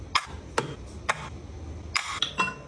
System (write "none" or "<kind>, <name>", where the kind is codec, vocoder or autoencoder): none